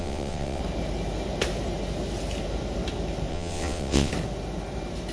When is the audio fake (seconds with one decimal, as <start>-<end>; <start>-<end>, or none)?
0.0-0.6; 3.3-4.1